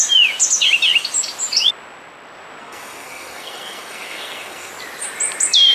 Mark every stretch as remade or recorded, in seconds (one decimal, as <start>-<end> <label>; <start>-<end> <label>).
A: 0.0-2.6 recorded; 2.6-4.7 remade; 4.7-5.7 recorded